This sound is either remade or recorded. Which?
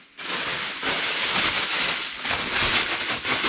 recorded